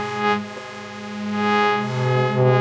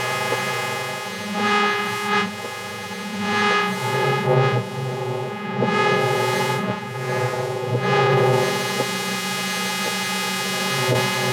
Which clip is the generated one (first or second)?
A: second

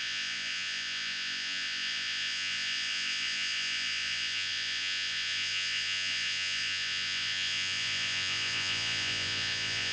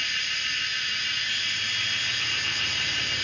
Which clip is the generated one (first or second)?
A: first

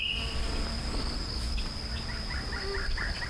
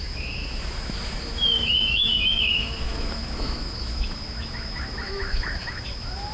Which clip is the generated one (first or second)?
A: second